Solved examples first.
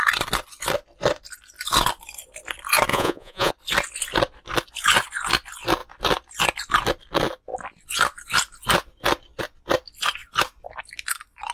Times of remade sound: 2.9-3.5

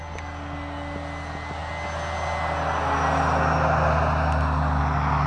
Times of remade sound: none

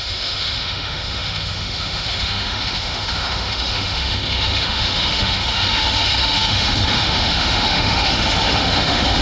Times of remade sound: 0.0-9.2

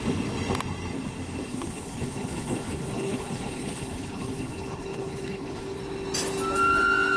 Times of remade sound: 1.5-5.8